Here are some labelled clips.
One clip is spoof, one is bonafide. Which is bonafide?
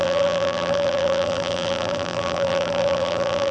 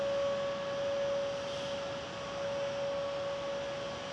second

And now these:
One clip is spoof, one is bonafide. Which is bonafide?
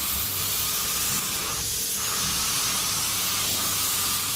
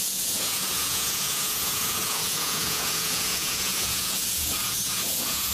first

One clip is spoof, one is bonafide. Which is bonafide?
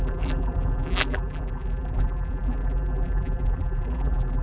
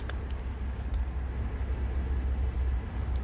second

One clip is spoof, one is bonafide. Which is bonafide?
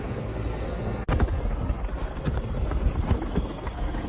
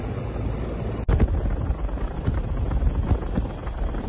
second